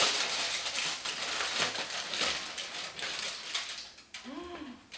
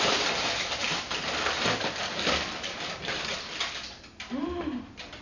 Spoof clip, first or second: second